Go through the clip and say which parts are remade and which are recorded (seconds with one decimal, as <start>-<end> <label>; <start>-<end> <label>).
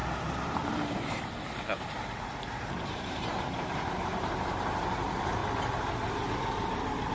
0.0-5.4 remade; 5.4-7.1 recorded